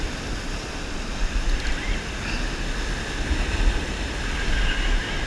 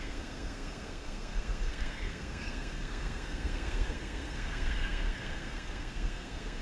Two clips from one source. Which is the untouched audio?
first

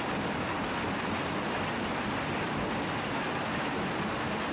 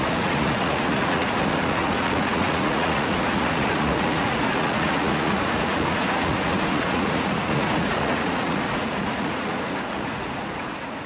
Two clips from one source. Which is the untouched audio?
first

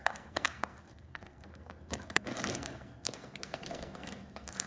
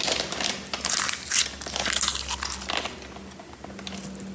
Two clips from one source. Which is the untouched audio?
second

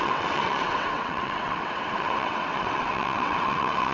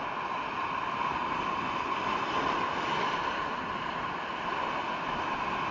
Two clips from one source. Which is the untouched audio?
second